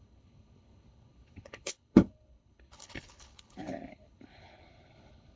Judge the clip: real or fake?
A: fake